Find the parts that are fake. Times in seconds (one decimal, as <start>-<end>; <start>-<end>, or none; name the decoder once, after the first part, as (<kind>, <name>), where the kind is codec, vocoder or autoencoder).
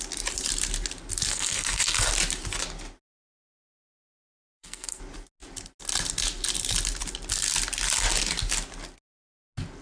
1.3-2.1 (codec, SNAC); 3.7-5.0